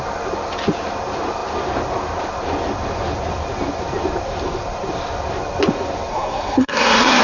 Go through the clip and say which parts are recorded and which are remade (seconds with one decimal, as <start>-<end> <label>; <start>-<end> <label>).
0.0-6.1 recorded; 6.1-7.2 remade